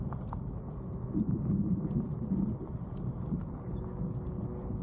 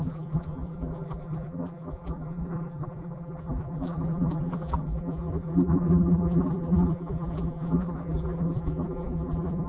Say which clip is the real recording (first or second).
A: first